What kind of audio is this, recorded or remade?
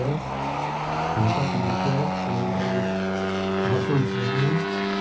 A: recorded